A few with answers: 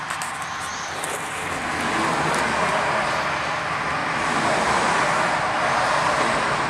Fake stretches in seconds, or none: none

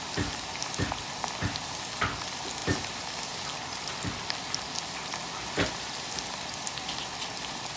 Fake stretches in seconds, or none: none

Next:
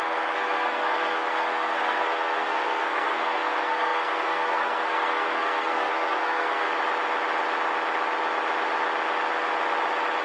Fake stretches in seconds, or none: 0.0-6.7 (codec, SNAC)

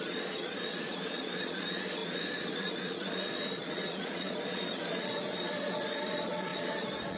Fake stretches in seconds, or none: 0.0-7.2 (vocoder, Vocos)

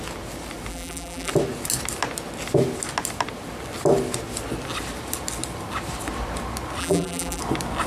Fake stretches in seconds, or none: 0.7-1.3 (vocoder, BigVGAN v2); 6.8-7.4

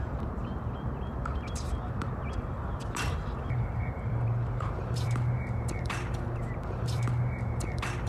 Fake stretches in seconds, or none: 0.0-8.1 (vocoder, BigVGAN v2)

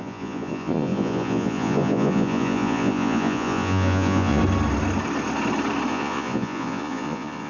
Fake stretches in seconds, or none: 0.0-4.4 (vocoder, Vocos); 5.9-7.5